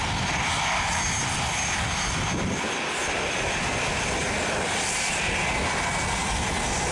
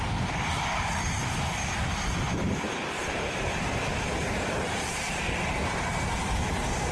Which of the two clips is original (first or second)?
first